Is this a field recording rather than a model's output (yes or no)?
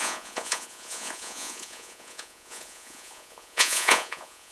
no